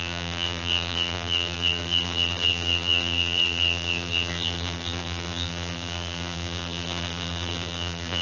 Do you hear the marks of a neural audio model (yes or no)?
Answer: yes